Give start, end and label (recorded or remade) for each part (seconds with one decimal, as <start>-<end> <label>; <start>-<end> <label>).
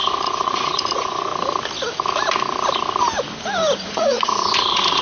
0.0-1.3 remade; 1.3-3.9 recorded; 3.9-5.0 remade